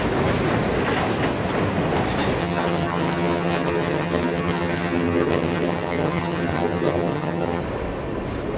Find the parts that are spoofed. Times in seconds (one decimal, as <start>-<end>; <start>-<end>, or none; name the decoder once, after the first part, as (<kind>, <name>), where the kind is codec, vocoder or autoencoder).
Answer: 2.4-7.6 (vocoder, HiFi-GAN)